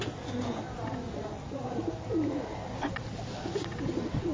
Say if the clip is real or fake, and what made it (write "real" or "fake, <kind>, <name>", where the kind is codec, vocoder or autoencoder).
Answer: real